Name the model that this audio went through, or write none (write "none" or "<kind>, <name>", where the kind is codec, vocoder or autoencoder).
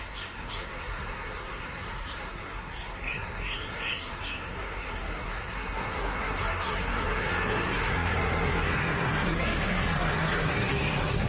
codec, SNAC